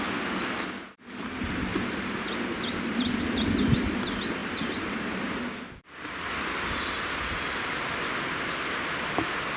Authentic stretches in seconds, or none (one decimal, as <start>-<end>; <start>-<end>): 0.0-9.6